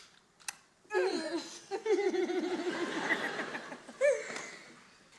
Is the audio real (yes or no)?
yes